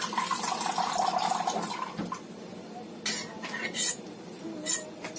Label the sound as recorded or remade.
recorded